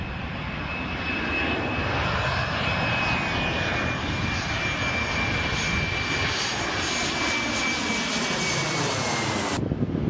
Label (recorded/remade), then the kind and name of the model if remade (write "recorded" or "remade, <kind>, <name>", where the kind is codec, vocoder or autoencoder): recorded